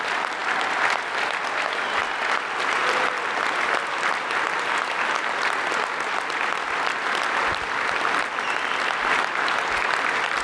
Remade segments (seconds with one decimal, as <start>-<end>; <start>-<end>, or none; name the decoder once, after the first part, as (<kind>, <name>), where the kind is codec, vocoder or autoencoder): none